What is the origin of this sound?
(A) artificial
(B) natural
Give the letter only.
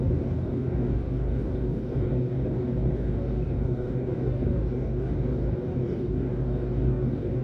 A